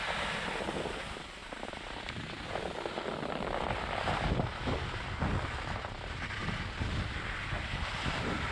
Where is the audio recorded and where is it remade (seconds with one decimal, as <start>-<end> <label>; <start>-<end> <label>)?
0.0-8.5 recorded